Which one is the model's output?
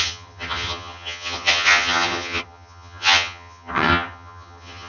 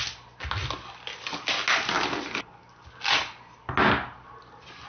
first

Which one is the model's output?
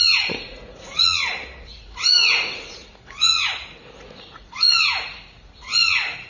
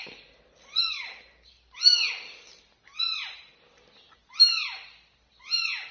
first